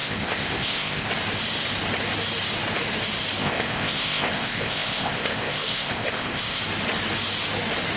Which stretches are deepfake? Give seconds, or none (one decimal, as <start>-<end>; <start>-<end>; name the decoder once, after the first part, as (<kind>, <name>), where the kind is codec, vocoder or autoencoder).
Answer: 0.0-1.1 (codec, ZipCodec); 3.4-6.6